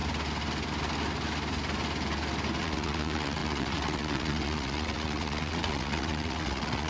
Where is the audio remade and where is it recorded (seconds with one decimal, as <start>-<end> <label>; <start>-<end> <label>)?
0.0-2.6 recorded; 2.6-6.9 remade